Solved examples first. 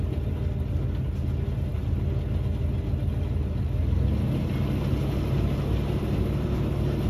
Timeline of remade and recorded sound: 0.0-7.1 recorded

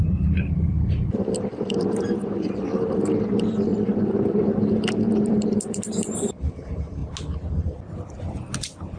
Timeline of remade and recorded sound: 0.0-7.0 remade; 7.0-9.0 recorded

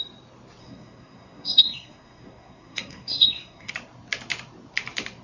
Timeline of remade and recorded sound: 0.0-0.6 recorded; 0.6-3.7 remade; 3.7-5.2 recorded

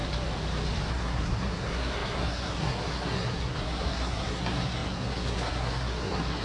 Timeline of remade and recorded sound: 0.0-0.9 recorded; 0.9-6.4 remade

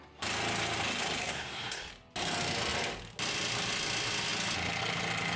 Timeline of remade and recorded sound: 0.0-1.2 recorded; 1.2-1.9 remade; 1.9-5.4 recorded

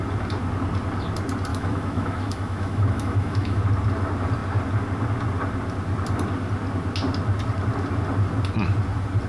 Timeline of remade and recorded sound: 0.0-1.5 recorded; 1.5-3.6 remade; 3.6-9.3 recorded

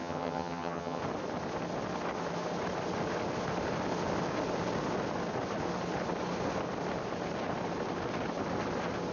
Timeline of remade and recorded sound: 0.0-1.0 remade; 1.0-9.1 recorded